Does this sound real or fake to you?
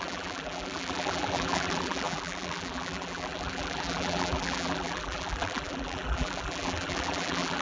fake